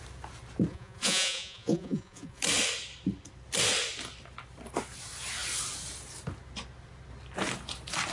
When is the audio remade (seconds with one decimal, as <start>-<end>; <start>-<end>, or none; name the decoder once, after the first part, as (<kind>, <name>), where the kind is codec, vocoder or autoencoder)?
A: 0.7-2.4 (vocoder, Vocos)